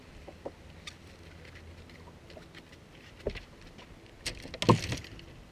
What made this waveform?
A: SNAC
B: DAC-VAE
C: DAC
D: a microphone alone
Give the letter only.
D